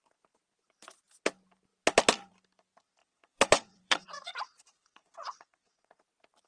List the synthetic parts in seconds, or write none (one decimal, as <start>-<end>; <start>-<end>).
3.0-5.9